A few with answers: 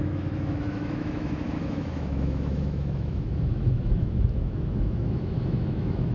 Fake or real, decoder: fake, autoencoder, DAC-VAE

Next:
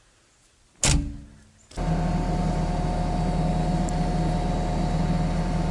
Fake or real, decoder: real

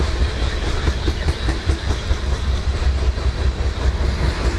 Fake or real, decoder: real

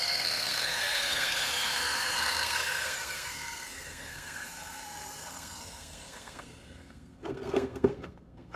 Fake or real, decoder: fake, codec, SNAC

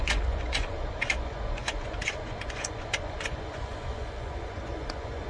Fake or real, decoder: fake, vocoder, Vocos